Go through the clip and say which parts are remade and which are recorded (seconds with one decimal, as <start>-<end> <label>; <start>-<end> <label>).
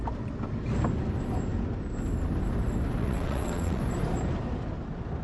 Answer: 0.0-3.0 recorded; 3.0-3.8 remade; 3.8-5.2 recorded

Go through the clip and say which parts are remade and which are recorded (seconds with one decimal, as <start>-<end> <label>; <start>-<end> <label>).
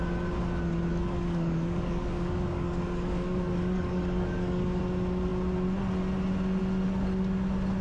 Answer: 0.0-0.9 recorded; 0.9-4.8 remade; 4.8-7.8 recorded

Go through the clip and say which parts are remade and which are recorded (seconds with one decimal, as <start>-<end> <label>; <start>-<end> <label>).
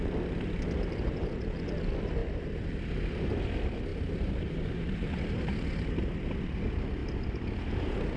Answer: 0.0-3.9 recorded; 3.9-6.6 remade; 6.6-8.2 recorded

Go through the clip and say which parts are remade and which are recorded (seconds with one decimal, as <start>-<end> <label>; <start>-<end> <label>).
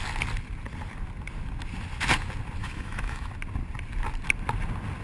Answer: 0.0-2.6 recorded; 2.6-3.3 remade; 3.3-5.0 recorded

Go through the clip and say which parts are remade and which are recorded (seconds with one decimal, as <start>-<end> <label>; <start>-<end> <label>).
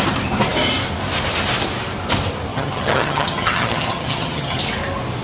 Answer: 0.0-2.5 recorded; 2.5-4.6 remade; 4.6-5.2 recorded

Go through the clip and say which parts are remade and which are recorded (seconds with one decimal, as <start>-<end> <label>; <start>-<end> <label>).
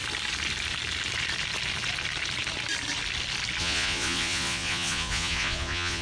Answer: 0.0-3.6 recorded; 3.6-6.0 remade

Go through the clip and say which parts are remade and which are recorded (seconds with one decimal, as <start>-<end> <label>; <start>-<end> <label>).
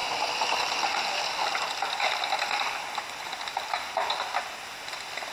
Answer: 0.0-5.3 recorded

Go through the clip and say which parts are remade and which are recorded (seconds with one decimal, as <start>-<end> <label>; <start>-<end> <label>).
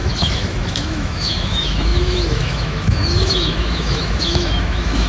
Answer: 0.0-5.1 remade